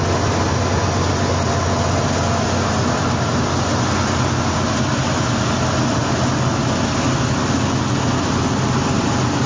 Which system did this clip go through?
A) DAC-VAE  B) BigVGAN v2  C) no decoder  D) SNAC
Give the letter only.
C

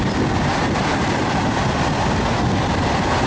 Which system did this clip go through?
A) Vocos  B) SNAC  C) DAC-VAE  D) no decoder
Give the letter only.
D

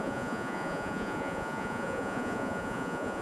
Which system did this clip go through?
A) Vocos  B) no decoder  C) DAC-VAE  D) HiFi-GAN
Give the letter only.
A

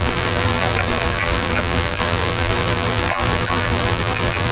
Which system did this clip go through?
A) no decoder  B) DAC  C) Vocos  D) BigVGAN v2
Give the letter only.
D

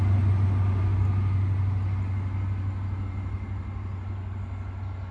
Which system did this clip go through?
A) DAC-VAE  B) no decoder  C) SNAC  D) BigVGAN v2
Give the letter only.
B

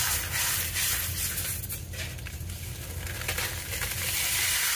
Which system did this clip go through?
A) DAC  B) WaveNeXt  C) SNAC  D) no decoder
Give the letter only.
D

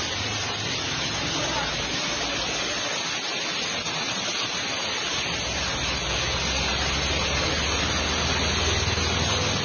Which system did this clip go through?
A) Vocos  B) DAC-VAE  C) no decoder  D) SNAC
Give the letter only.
C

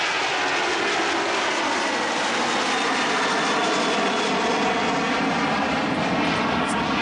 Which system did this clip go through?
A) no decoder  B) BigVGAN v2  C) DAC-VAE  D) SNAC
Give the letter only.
A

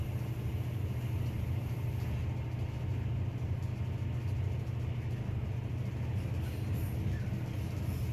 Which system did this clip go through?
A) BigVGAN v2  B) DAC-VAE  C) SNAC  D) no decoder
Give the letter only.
D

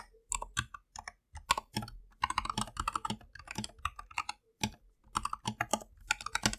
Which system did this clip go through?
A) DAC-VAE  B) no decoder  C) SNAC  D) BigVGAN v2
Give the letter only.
B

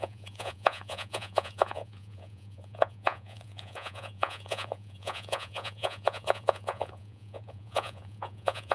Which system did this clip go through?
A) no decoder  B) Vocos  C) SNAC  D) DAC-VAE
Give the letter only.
B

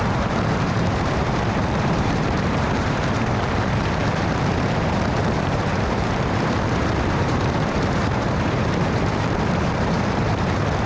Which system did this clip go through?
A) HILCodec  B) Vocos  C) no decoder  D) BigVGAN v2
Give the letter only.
D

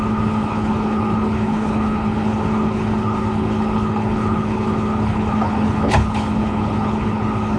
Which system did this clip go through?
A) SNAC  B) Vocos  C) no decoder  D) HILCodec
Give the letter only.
D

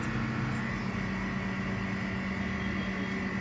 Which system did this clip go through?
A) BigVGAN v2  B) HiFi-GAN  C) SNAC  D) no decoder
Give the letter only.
D